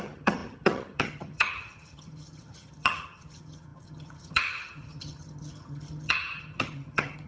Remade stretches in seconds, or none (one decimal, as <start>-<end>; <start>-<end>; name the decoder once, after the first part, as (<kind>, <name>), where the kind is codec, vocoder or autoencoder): 0.0-7.3 (vocoder, HiFi-GAN)